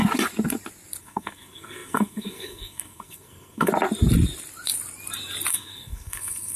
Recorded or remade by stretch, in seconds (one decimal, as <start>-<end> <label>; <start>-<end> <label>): 0.0-1.0 recorded; 1.0-3.7 remade; 3.7-5.5 recorded; 5.5-6.6 remade

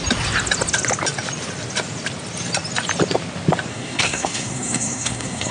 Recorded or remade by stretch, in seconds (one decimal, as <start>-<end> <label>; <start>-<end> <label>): 0.0-3.7 recorded; 3.7-5.5 remade

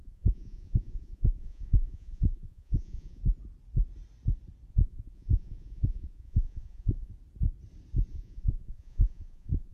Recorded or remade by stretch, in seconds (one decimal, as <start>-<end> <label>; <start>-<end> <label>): 0.0-3.2 remade; 3.2-4.7 recorded; 4.7-7.1 remade; 7.1-8.1 recorded; 8.1-9.7 remade

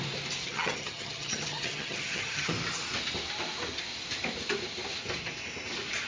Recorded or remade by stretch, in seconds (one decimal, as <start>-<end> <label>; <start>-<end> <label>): 0.0-0.4 recorded; 0.4-2.5 remade; 2.5-6.1 recorded